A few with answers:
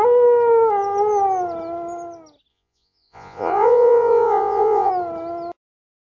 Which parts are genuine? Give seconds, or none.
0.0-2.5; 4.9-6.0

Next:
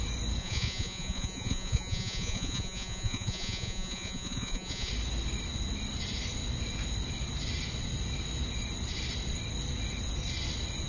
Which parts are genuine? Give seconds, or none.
0.0-0.4; 4.9-10.9